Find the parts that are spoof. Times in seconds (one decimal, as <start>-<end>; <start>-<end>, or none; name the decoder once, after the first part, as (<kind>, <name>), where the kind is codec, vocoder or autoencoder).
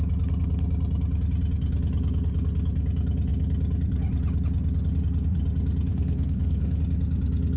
5.9-6.8 (codec, SNAC)